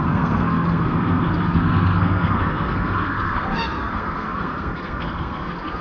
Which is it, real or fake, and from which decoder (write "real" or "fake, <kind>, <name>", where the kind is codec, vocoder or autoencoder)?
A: fake, codec, SNAC